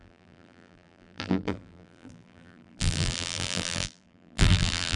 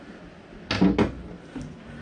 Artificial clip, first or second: first